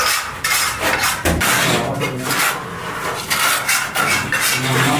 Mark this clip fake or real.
real